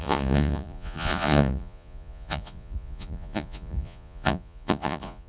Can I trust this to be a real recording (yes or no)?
no